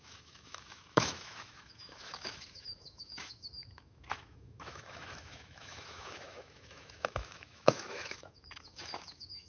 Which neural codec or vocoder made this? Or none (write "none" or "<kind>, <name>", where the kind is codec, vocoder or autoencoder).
autoencoder, DAC-VAE